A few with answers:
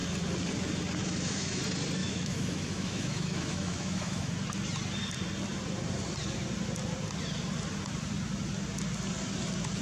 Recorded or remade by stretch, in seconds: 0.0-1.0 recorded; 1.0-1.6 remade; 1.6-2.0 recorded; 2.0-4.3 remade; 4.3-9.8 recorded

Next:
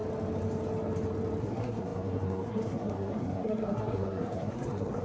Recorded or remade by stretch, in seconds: 0.0-1.4 recorded; 1.4-5.0 remade

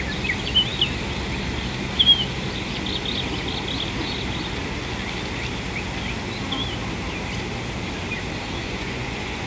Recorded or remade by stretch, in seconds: 0.0-8.6 recorded; 8.6-9.5 remade